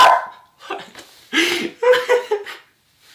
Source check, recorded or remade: recorded